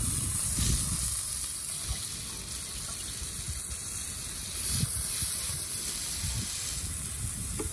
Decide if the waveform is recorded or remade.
recorded